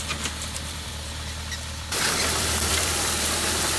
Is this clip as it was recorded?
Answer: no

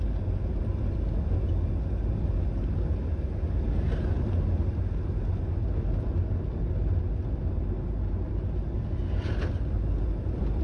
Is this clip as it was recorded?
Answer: yes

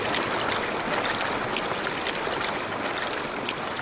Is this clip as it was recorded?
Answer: yes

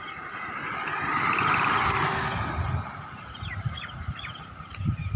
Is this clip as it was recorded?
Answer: no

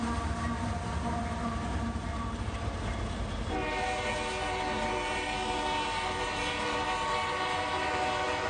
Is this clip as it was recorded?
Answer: no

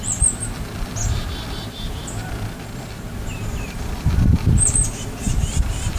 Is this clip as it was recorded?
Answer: no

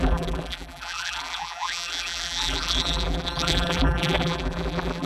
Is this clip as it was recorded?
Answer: no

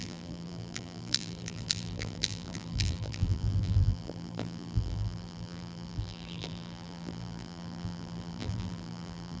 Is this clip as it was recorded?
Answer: no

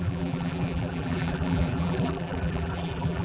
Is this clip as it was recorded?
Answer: no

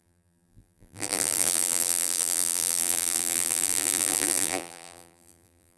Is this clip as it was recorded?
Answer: no